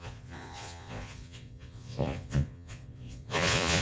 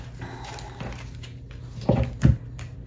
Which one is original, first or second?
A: second